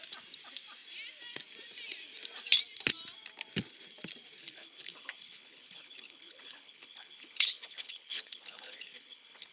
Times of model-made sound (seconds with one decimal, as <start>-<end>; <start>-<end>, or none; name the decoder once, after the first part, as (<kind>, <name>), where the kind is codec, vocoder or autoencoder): 4.4-9.5 (codec, HILCodec)